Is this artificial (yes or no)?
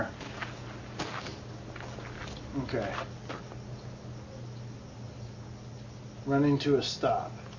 no